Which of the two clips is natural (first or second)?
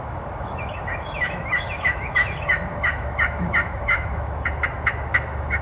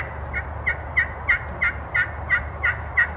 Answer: second